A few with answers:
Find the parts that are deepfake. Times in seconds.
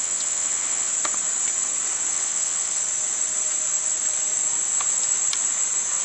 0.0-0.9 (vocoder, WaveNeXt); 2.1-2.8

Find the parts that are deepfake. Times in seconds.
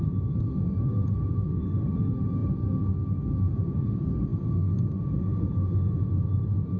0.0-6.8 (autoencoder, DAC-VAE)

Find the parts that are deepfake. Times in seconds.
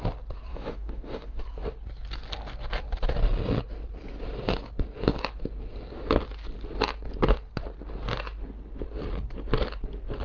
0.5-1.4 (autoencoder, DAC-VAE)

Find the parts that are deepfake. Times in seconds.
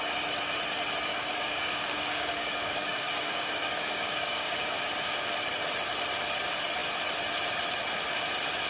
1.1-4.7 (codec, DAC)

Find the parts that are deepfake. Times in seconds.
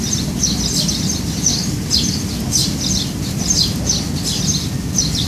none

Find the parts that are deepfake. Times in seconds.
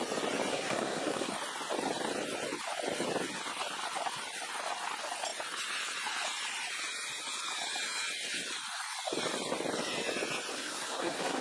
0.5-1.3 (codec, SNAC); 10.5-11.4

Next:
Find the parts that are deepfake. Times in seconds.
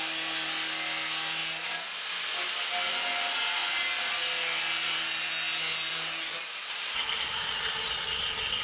none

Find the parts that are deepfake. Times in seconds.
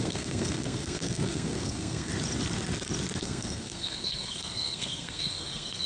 0.0-2.1 (codec, SNAC); 3.2-5.9